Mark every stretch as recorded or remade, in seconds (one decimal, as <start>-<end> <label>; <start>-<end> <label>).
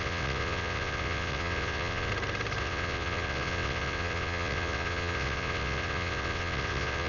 0.0-2.1 remade; 2.1-2.6 recorded; 2.6-7.1 remade